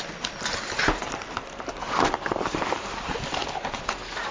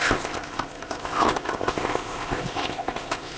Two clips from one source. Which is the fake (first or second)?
second